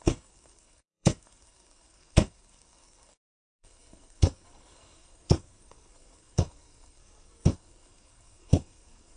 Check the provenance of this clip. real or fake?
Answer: fake